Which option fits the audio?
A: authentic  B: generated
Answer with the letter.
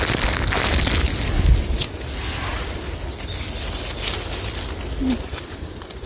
A